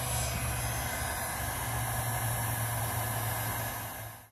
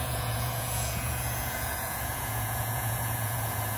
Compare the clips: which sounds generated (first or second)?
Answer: second